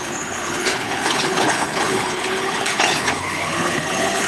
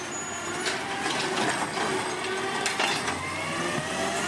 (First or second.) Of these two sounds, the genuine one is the second